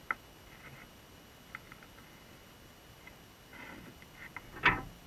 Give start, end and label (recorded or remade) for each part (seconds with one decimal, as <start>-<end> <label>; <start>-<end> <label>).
0.0-5.1 recorded